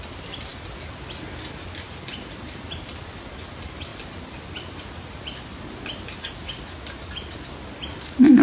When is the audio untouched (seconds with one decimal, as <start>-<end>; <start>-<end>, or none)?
0.0-8.4